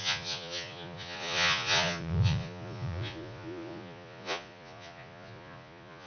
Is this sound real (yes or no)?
no